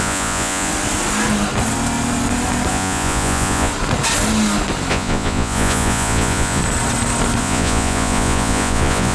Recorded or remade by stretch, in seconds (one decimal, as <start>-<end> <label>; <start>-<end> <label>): 0.0-0.7 remade; 0.7-2.7 recorded; 2.7-3.7 remade; 3.7-4.9 recorded; 4.9-6.6 remade; 6.6-7.4 recorded; 7.4-9.1 remade